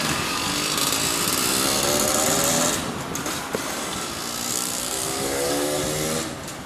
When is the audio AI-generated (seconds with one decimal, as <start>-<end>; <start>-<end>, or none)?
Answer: 0.0-0.5; 4.5-5.8